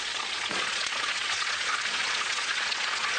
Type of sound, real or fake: fake